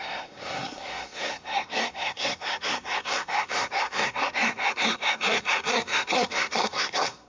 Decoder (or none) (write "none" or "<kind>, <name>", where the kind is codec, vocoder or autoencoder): codec, SNAC